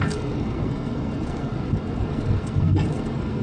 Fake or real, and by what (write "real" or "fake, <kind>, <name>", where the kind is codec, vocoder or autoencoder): fake, codec, SNAC